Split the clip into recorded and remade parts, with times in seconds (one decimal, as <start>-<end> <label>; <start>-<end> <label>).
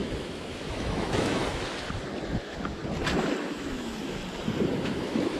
0.0-1.4 remade; 1.4-2.4 recorded; 2.4-2.8 remade; 2.8-3.4 recorded; 3.4-4.2 remade; 4.2-4.8 recorded; 4.8-5.4 remade